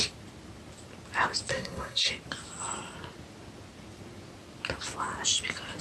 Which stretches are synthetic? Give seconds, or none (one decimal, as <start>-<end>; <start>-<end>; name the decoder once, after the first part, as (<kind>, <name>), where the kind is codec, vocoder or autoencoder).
1.5-2.1 (codec, SNAC)